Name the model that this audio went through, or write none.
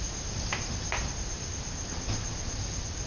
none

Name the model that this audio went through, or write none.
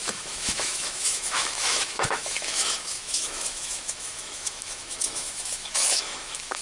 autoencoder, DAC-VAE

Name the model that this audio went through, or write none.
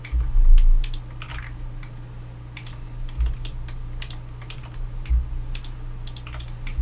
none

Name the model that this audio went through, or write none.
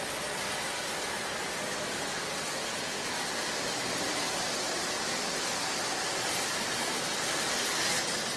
none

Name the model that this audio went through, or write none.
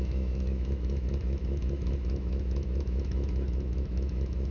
autoencoder, DAC-VAE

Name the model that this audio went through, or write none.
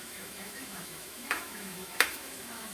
autoencoder, DAC-VAE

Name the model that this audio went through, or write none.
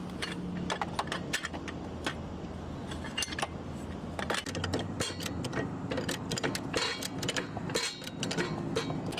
none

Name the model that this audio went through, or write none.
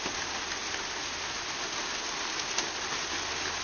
none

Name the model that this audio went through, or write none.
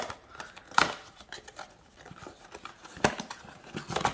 none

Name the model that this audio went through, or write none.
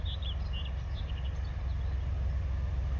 none